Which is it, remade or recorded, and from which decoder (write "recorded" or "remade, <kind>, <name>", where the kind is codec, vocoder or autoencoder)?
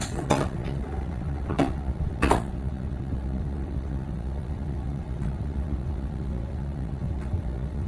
remade, vocoder, WaveNeXt